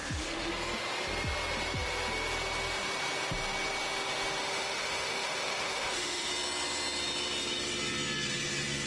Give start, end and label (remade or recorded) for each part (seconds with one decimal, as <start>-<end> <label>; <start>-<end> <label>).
0.0-0.5 remade; 0.5-4.4 recorded; 4.4-6.3 remade; 6.3-8.9 recorded